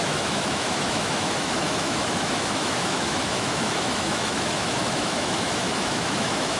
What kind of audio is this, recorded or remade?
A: remade